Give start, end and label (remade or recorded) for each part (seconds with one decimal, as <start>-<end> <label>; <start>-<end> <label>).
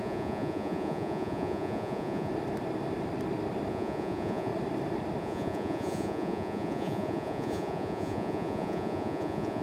0.0-2.3 remade; 2.3-3.7 recorded; 3.7-4.5 remade; 4.5-5.2 recorded; 5.2-9.6 remade